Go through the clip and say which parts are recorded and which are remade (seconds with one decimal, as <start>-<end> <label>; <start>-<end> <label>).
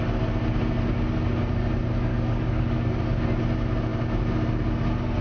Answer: 0.0-2.1 recorded; 2.1-3.0 remade; 3.0-5.2 recorded